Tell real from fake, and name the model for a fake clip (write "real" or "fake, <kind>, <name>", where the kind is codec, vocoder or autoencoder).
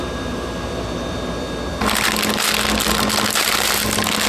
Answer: real